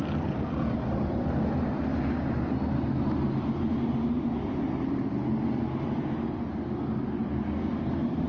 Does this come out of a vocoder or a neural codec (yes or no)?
no